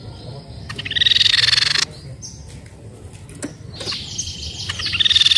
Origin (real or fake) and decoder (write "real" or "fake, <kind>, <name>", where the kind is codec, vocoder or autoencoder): real